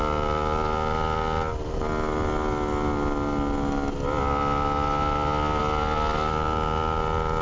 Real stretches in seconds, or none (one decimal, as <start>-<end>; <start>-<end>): 0.0-7.4